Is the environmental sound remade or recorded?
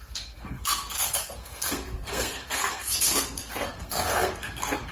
remade